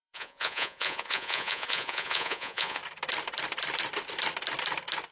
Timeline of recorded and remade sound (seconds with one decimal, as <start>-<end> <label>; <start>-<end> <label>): 0.0-2.8 remade; 2.8-5.1 recorded